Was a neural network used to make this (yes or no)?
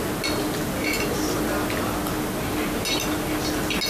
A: no